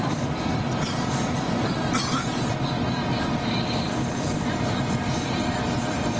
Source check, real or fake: fake